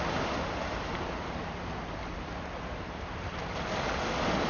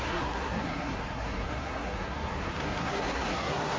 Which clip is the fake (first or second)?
second